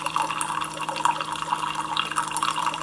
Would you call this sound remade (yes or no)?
no